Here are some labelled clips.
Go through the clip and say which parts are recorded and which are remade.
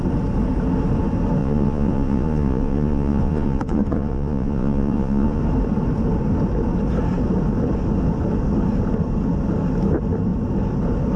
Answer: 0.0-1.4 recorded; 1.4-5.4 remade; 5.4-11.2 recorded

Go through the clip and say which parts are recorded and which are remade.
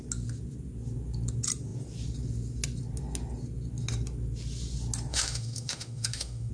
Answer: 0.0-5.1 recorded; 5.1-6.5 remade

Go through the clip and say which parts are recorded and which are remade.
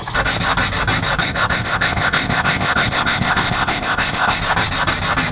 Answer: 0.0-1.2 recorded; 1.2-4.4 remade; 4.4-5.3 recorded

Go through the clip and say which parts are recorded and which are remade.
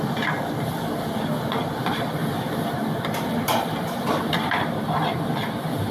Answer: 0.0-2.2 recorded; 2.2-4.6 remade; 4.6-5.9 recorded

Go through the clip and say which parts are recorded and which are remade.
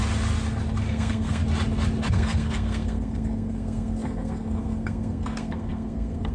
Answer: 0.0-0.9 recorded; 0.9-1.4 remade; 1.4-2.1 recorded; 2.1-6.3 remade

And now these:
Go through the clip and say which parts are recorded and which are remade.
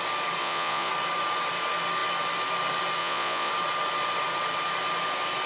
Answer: 0.0-0.4 recorded; 0.4-0.9 remade; 0.9-3.0 recorded; 3.0-3.5 remade; 3.5-5.5 recorded